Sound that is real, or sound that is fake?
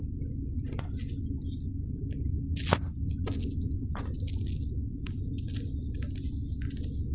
real